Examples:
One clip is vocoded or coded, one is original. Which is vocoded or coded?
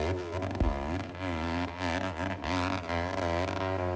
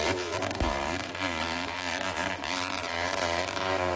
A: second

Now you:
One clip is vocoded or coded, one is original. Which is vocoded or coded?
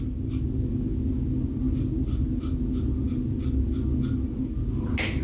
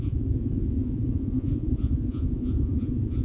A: second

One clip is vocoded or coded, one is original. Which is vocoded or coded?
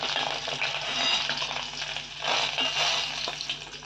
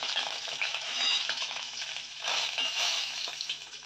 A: second